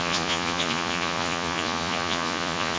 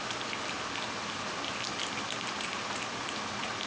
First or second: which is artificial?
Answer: first